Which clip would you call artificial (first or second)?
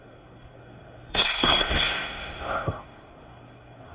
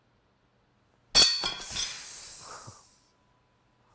first